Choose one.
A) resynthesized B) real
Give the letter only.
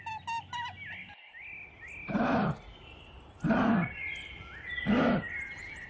B